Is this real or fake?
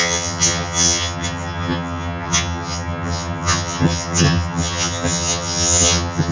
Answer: fake